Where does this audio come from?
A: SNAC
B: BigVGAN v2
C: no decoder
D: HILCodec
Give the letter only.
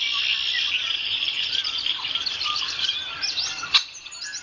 B